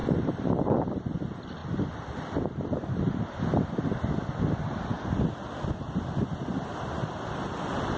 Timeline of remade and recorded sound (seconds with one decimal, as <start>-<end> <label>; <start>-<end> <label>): 0.0-0.7 remade; 0.7-1.6 recorded; 1.6-3.4 remade; 3.4-4.9 recorded; 4.9-5.5 remade; 5.5-8.0 recorded